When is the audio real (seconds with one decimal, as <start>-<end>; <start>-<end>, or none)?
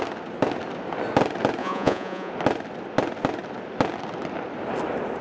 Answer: 0.0-1.6; 2.3-5.2